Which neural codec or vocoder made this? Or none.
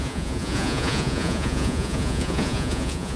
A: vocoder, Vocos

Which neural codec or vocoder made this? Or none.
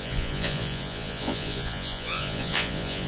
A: vocoder, Vocos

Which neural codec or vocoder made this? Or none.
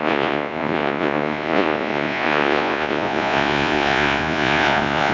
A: vocoder, Vocos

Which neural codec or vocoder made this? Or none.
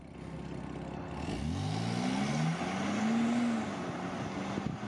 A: none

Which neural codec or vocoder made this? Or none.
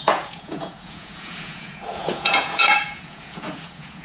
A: vocoder, Vocos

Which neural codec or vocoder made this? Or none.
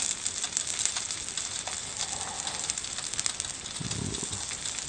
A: none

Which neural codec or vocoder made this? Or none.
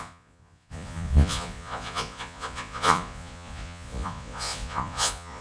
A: vocoder, Vocos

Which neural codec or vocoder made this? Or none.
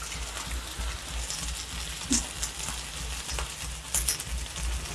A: none